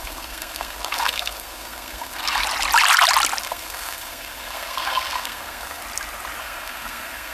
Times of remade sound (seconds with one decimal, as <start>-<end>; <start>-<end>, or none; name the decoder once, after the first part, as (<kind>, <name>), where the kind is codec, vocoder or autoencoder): 0.0-2.4 (codec, SNAC); 3.4-5.8; 6.4-7.3